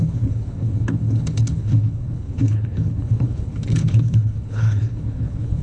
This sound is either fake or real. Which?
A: fake